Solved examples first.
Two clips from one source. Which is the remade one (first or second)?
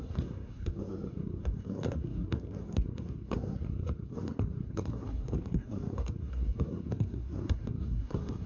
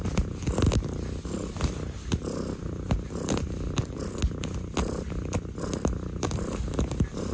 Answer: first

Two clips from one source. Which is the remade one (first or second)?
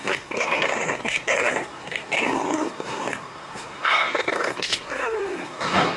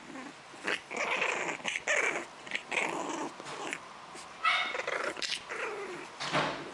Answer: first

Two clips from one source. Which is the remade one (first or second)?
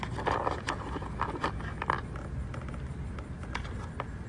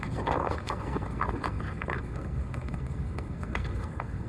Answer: second